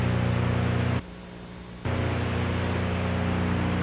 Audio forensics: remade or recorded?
recorded